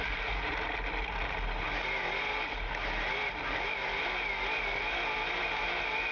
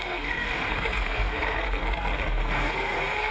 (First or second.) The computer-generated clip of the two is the second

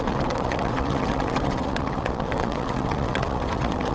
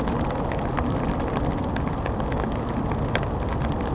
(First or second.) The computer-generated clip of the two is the first